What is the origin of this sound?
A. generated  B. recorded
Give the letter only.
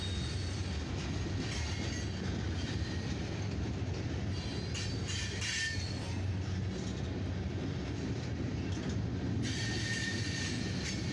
B